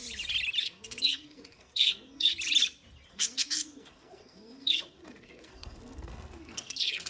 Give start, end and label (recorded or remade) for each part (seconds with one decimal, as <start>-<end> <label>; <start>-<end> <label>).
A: 0.0-0.6 recorded; 0.6-2.3 remade; 2.3-3.1 recorded; 3.1-7.1 remade